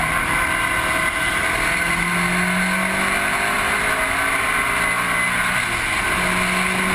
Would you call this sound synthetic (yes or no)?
no